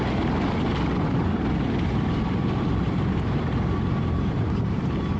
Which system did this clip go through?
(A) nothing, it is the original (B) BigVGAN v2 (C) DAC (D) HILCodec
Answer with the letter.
A